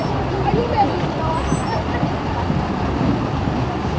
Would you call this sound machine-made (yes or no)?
no